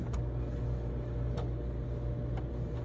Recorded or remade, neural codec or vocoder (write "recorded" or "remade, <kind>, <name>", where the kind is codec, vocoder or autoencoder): recorded